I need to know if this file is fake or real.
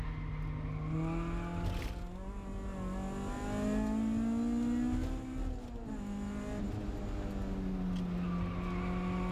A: real